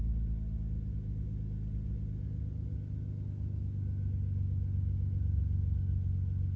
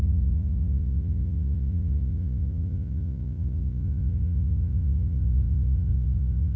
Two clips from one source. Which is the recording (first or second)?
first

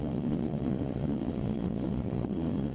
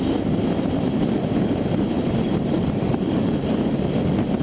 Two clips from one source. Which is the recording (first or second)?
second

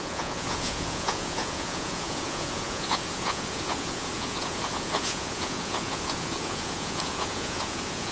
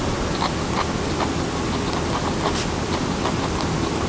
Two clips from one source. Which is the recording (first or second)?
second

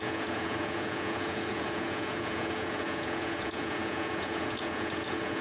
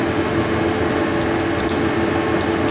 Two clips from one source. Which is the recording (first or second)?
second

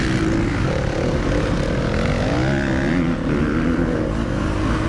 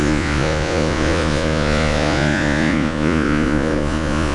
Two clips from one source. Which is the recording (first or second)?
first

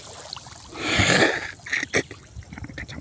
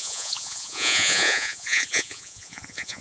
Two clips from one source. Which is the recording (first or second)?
first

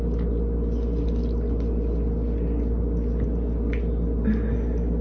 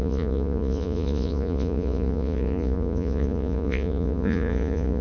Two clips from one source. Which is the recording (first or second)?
first